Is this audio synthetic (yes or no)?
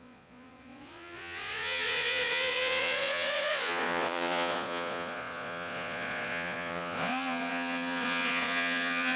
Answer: yes